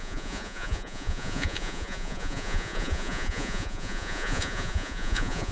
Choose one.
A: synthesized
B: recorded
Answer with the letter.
A